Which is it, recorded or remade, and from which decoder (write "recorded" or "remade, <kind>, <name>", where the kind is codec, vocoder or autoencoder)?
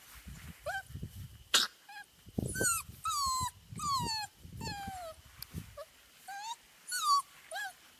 recorded